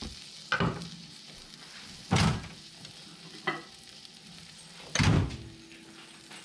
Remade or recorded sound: recorded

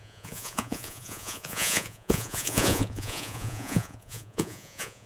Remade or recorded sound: remade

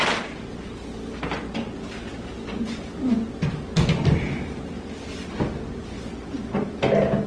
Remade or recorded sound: recorded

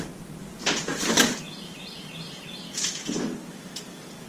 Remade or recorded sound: remade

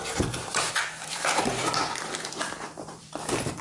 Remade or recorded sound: remade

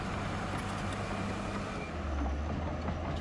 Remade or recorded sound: recorded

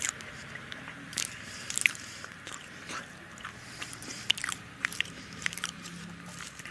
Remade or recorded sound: remade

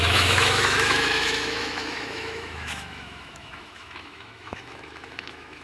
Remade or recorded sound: remade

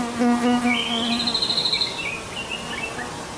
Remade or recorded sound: recorded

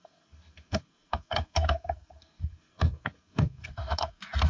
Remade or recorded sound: remade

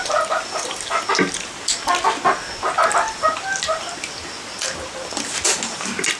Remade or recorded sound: recorded